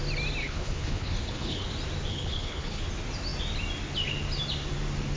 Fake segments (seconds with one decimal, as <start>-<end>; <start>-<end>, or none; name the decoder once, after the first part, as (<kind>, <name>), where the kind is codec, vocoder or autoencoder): 0.4-1.7 (codec, HILCodec); 2.1-2.8